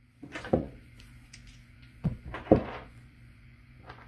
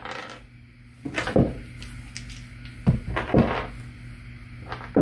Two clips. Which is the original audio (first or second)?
second